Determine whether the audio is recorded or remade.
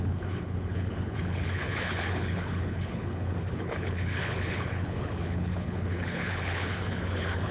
remade